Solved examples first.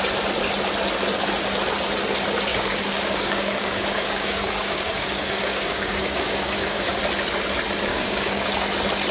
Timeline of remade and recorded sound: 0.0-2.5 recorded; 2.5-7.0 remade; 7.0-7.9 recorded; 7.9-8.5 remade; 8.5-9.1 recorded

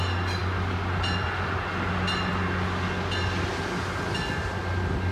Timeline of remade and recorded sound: 0.0-5.1 recorded